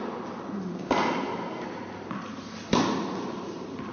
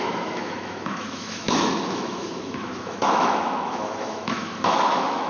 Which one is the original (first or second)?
first